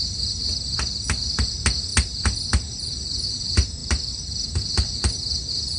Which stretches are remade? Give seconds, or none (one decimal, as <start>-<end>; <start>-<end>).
none